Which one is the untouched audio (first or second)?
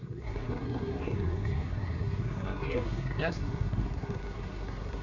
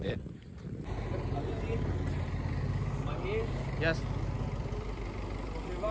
second